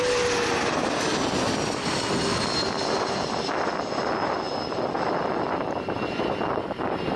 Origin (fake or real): real